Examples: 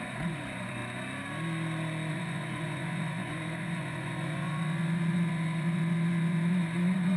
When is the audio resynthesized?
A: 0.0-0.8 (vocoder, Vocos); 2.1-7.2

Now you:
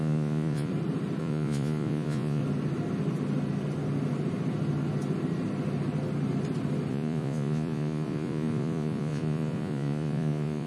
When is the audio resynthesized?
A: 0.0-0.7 (vocoder, Vocos); 1.2-2.4; 6.9-10.7

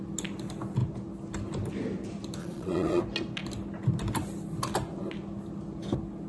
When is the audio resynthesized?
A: 2.4-3.0 (vocoder, Vocos)

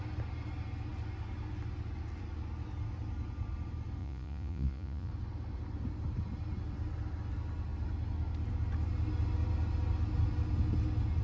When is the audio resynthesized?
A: 4.0-5.1 (vocoder, Vocos)